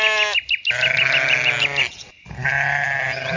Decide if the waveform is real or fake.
real